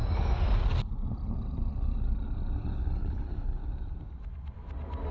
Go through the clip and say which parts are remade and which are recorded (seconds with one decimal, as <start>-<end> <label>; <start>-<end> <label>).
0.0-3.0 recorded; 3.0-3.6 remade; 3.6-5.1 recorded